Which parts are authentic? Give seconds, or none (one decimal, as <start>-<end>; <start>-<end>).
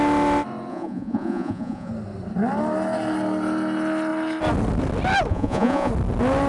0.0-0.7; 1.9-5.3; 5.9-6.5